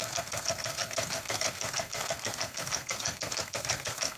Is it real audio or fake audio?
fake